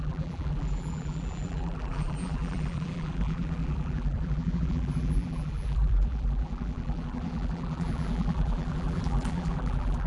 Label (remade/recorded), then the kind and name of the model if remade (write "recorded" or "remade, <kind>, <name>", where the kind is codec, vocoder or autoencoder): remade, vocoder, BigVGAN v2